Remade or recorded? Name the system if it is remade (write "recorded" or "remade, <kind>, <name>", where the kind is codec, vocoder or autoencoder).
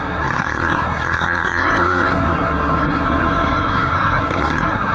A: remade, codec, SNAC